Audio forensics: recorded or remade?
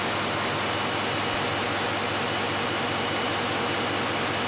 recorded